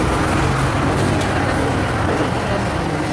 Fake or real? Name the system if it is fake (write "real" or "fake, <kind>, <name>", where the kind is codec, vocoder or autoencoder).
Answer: real